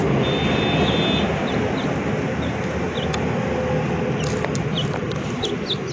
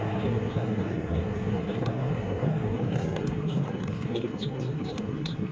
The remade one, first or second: second